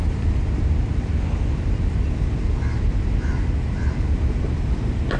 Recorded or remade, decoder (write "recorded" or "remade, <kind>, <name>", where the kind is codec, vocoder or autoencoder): recorded